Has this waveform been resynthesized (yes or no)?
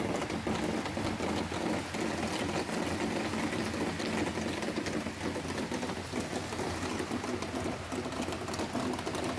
no